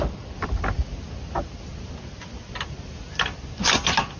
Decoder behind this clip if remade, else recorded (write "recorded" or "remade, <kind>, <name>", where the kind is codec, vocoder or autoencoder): recorded